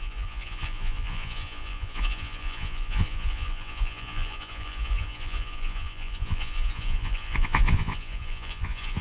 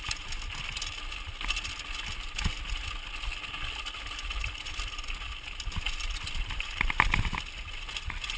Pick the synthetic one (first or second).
first